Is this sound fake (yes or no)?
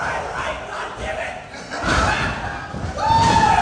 no